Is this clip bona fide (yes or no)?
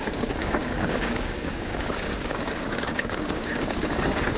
no